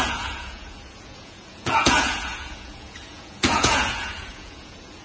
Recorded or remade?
remade